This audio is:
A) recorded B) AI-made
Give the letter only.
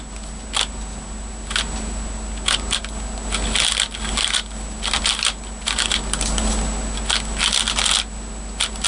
A